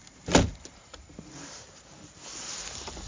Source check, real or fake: real